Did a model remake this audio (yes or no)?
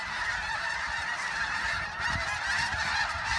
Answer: yes